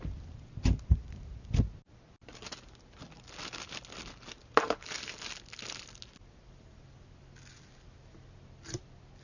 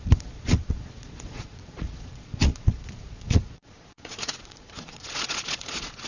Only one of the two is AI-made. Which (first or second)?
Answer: second